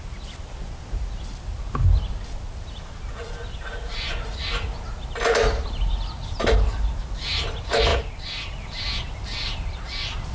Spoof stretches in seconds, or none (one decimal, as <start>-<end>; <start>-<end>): none